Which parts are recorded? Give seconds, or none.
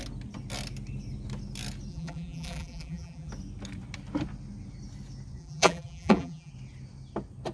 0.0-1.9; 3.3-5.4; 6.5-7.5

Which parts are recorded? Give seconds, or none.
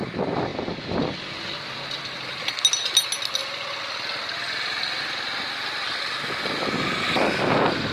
0.0-7.9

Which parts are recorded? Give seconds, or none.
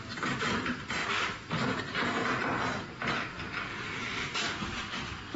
2.2-3.8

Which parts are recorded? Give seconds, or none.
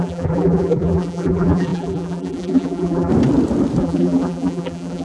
3.1-3.8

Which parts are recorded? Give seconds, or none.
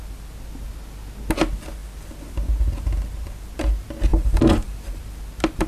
0.0-4.1; 5.0-5.7